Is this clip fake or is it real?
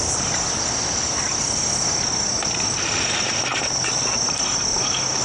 real